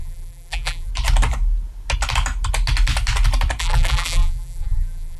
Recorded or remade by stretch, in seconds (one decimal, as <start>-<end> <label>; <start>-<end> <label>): 0.0-0.9 remade; 0.9-3.6 recorded; 3.6-5.2 remade

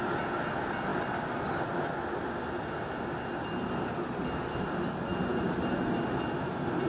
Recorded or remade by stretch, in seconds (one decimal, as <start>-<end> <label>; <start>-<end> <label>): 0.0-6.9 recorded

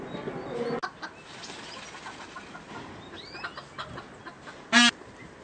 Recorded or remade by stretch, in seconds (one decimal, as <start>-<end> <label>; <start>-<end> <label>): 0.0-5.4 recorded

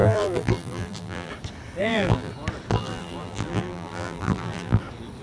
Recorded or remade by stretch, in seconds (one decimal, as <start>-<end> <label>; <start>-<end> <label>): 0.0-1.3 remade; 1.3-1.8 recorded; 1.8-2.3 remade; 2.3-2.7 recorded; 2.7-4.8 remade; 4.8-5.2 recorded

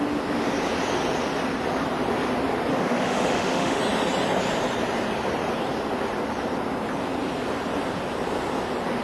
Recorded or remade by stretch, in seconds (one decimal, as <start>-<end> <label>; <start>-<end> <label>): 0.0-2.7 recorded; 2.7-3.8 remade; 3.8-9.0 recorded

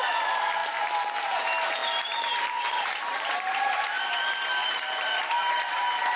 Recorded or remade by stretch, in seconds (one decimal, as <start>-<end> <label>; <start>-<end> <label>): 0.0-6.2 remade

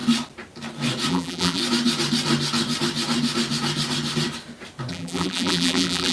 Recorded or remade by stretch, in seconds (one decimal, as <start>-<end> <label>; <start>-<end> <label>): 0.0-1.1 recorded; 1.1-1.6 remade; 1.6-4.9 recorded; 4.9-6.1 remade

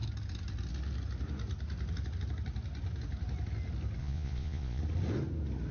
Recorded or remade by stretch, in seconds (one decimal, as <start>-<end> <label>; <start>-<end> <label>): 0.0-4.0 recorded; 4.0-4.8 remade; 4.8-5.7 recorded